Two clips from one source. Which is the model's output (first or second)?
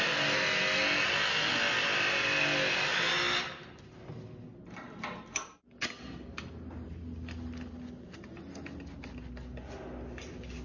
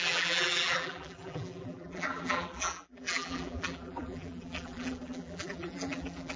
second